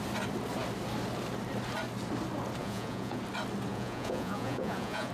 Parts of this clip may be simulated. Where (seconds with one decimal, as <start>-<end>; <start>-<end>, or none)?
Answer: 2.6-3.2; 3.7-5.1